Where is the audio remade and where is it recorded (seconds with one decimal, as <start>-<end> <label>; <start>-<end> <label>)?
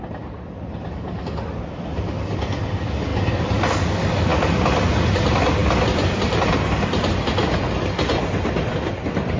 0.0-9.4 recorded